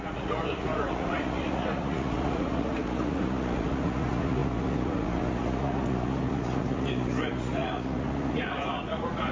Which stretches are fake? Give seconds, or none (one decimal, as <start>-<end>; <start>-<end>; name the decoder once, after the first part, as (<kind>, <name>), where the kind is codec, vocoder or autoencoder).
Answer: 0.0-9.3 (vocoder, Vocos)